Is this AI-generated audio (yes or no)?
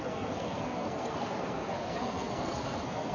yes